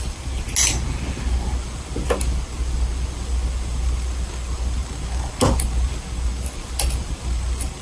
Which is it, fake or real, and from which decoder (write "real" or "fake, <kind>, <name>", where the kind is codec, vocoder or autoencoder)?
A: real